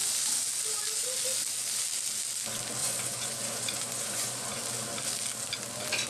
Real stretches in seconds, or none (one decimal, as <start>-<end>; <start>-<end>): 0.0-2.8; 4.6-6.1